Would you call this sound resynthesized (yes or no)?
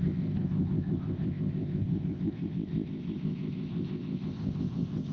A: yes